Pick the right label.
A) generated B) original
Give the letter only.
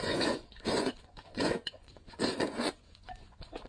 A